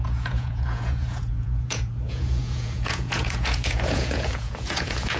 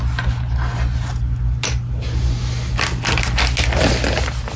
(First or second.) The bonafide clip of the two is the second